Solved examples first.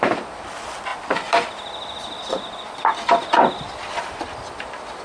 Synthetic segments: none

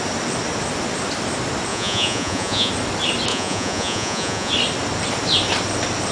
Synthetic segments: 1.7-2.7 (vocoder, Vocos); 3.3-4.5

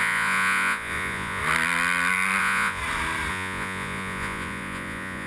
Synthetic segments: 0.0-1.4 (vocoder, Vocos); 2.4-2.8; 3.3-5.3